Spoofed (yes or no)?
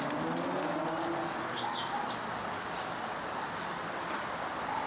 no